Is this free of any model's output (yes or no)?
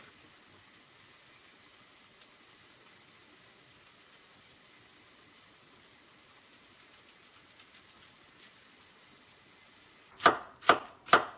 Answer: yes